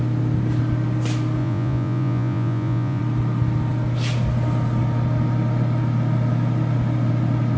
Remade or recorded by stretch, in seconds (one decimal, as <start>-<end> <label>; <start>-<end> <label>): 0.0-1.4 recorded; 1.4-3.0 remade; 3.0-7.6 recorded